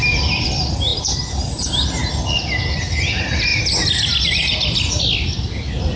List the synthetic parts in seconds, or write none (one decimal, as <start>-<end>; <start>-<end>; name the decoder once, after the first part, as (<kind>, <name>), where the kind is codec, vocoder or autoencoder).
none